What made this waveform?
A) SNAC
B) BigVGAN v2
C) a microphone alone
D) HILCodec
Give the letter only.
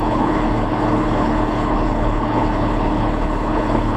D